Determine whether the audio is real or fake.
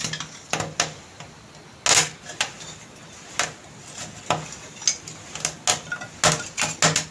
real